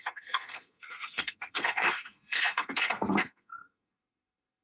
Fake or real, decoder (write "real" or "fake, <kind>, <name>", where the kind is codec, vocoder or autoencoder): fake, codec, SNAC